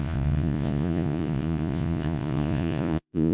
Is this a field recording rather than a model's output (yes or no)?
no